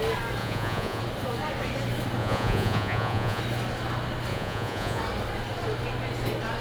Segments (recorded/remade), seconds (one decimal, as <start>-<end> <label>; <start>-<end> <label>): 0.0-0.4 recorded; 0.4-1.0 remade; 1.0-2.2 recorded; 2.2-3.4 remade; 3.4-4.3 recorded; 4.3-5.0 remade; 5.0-6.6 recorded